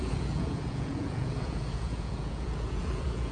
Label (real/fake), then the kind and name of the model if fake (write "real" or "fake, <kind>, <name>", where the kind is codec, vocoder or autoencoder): fake, vocoder, Vocos